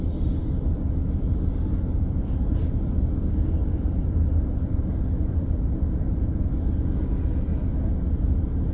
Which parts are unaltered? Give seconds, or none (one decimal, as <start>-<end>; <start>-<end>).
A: 0.0-0.4; 2.5-3.6; 6.5-8.7